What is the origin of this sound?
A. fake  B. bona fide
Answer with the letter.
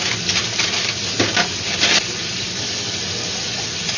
B